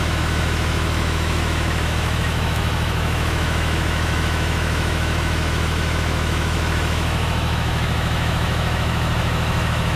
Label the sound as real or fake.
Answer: fake